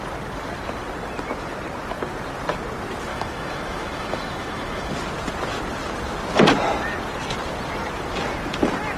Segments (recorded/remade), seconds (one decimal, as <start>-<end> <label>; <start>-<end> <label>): 0.0-3.1 recorded; 3.1-4.9 remade; 4.9-9.0 recorded